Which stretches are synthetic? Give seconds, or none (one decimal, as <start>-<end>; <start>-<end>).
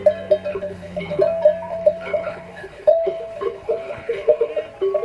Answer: 0.5-1.2; 1.7-4.5